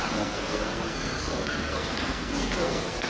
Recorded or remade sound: remade